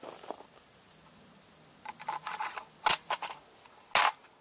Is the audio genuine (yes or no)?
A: yes